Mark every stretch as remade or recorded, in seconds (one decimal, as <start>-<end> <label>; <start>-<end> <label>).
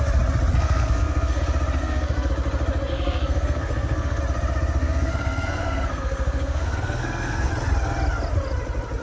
0.0-0.6 recorded; 0.6-1.4 remade; 1.4-1.8 recorded; 1.8-2.3 remade; 2.3-2.9 recorded; 2.9-4.2 remade; 4.2-4.8 recorded; 4.8-7.5 remade; 7.5-9.0 recorded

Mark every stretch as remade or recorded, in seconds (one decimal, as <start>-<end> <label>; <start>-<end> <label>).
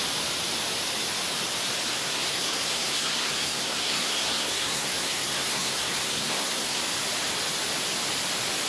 0.0-1.9 recorded; 1.9-6.8 remade; 6.8-8.7 recorded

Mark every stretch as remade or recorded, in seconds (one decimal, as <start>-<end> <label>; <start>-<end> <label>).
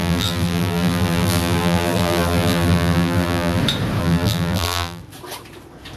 0.0-3.6 remade; 3.6-4.0 recorded; 4.0-5.0 remade; 5.0-6.0 recorded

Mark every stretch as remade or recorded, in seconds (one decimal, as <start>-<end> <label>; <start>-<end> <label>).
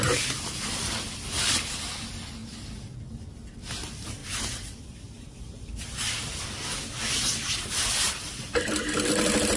0.0-9.6 recorded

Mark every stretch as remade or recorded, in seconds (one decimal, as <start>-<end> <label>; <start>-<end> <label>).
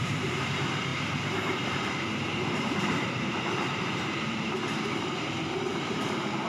0.0-6.5 remade